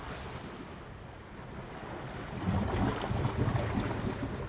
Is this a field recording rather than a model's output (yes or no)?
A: yes